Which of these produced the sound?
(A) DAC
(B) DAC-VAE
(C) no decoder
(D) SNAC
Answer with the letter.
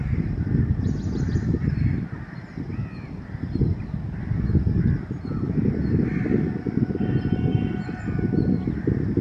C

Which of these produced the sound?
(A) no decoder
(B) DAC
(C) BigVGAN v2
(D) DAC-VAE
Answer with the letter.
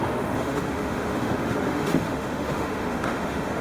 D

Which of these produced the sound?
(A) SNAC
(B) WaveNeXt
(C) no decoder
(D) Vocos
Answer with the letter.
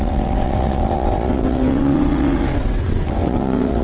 B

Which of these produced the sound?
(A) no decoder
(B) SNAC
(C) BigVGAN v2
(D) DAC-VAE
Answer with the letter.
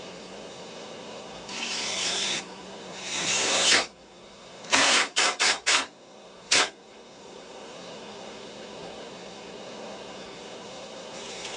B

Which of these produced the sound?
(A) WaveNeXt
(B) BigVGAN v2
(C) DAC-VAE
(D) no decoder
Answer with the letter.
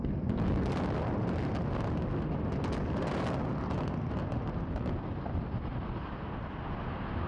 D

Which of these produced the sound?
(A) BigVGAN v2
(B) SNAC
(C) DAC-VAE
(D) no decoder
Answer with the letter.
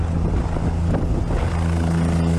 D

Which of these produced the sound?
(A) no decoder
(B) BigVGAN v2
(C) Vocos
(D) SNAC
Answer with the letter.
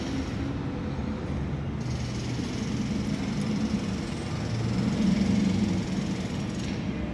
A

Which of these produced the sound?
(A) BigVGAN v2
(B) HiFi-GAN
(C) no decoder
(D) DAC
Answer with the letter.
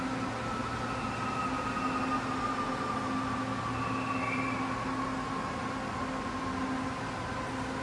C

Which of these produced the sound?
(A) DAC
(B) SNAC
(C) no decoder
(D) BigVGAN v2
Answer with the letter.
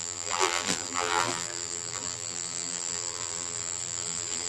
D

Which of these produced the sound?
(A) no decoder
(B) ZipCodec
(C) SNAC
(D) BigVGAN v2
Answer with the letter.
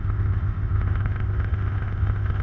B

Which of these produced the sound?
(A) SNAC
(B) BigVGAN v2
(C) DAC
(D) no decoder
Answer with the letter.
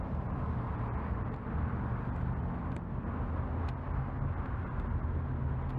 D